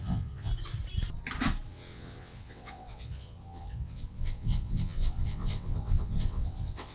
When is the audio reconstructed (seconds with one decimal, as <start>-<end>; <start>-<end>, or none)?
0.0-0.5; 1.7-6.9